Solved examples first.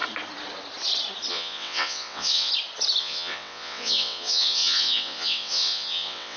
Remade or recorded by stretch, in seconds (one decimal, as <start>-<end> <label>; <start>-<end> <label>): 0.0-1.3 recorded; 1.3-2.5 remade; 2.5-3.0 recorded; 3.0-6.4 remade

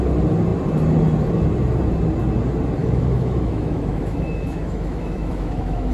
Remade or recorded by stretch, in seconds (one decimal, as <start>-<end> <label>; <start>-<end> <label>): 0.0-2.8 recorded; 2.8-5.9 remade

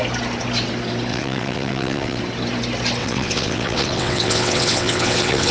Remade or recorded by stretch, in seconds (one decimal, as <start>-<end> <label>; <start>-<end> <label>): 0.0-1.1 recorded; 1.1-2.2 remade; 2.2-3.0 recorded; 3.0-5.5 remade